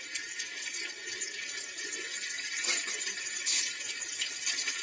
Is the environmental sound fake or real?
real